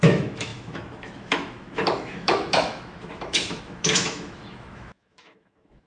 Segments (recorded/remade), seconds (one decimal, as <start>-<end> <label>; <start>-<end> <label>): 0.0-5.9 remade